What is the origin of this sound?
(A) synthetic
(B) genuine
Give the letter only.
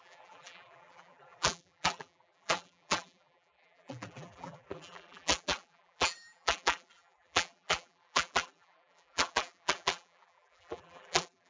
A